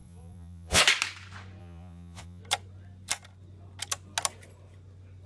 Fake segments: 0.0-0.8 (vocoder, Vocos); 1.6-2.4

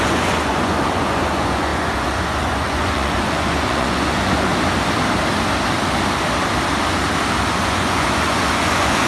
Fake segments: 0.0-4.5 (vocoder, Vocos); 7.5-9.1

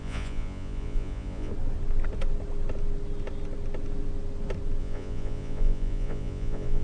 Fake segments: 0.0-1.5 (vocoder, Vocos); 4.8-6.8

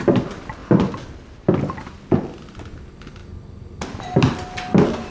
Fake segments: none

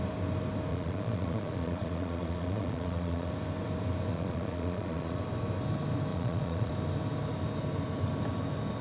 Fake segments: 0.7-3.3 (vocoder, Vocos); 4.1-5.2; 6.1-6.7